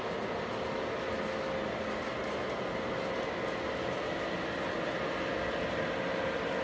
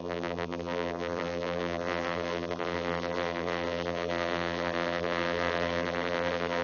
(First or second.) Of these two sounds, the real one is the first